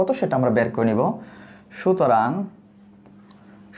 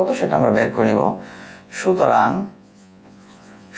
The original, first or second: first